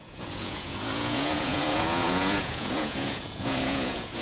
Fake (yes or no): yes